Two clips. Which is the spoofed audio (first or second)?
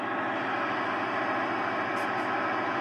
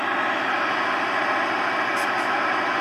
second